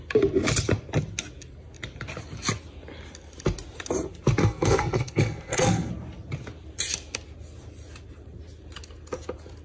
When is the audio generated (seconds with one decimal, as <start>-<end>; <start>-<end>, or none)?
4.4-5.9